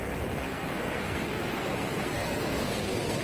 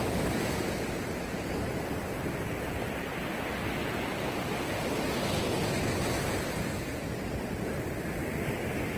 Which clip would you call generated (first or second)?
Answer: first